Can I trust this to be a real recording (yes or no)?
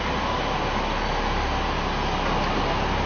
yes